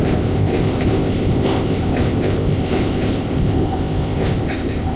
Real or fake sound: fake